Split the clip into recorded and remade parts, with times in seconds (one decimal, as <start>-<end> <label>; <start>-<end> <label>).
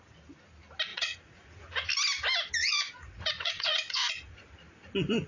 0.0-0.9 recorded; 0.9-1.9 remade; 1.9-2.6 recorded; 2.6-4.5 remade; 4.5-5.3 recorded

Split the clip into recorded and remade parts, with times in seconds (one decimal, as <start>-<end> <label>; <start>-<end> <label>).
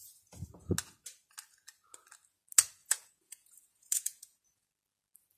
0.0-2.8 recorded; 2.8-4.7 remade; 4.7-5.4 recorded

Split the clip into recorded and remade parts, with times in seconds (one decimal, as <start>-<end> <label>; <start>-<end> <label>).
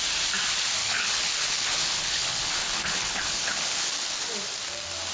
0.0-0.8 recorded; 0.8-3.9 remade; 3.9-5.1 recorded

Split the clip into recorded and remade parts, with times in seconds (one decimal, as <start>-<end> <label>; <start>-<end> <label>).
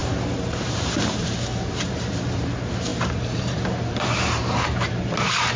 0.0-5.6 remade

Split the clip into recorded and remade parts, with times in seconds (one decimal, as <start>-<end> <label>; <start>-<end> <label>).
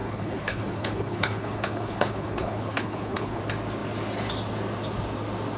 0.0-3.4 remade; 3.4-5.6 recorded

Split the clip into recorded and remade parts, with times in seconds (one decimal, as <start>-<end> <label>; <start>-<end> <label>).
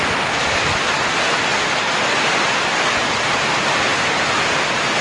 0.0-3.9 recorded; 3.9-5.0 remade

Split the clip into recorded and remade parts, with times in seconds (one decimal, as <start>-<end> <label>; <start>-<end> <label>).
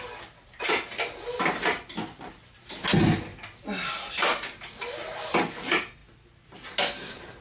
0.0-7.4 recorded